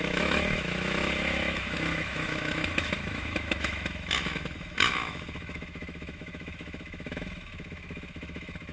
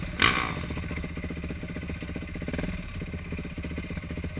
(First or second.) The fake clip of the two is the first